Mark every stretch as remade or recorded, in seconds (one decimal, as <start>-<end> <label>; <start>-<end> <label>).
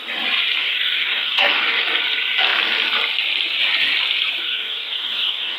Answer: 0.0-0.6 recorded; 0.6-1.8 remade; 1.8-4.4 recorded; 4.4-5.6 remade